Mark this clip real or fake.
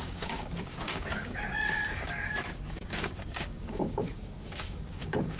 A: fake